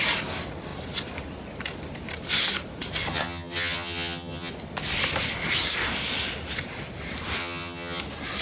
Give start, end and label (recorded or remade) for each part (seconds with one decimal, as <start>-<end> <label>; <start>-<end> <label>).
0.0-3.1 recorded; 3.1-4.5 remade; 4.5-7.4 recorded; 7.4-8.0 remade; 8.0-8.4 recorded